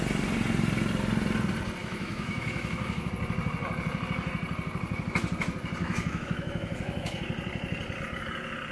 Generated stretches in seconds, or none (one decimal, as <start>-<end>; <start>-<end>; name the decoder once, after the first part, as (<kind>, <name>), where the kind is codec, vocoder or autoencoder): 1.8-3.1 (autoencoder, DAC-VAE); 5.8-7.2